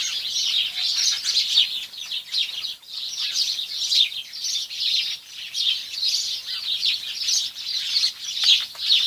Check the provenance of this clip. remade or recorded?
recorded